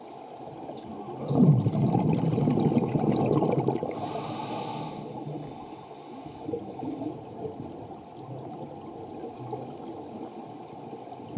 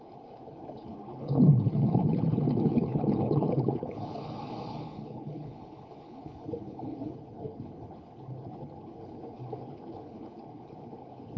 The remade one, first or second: second